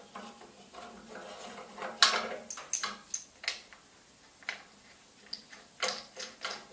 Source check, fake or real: real